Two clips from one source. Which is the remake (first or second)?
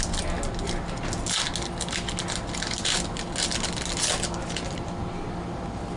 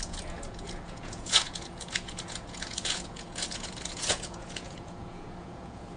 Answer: second